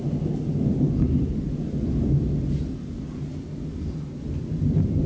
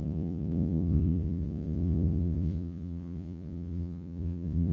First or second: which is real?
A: first